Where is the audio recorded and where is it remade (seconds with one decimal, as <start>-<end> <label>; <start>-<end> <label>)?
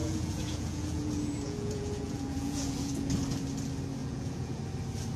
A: 0.0-3.1 remade; 3.1-4.0 recorded; 4.0-4.6 remade; 4.6-5.2 recorded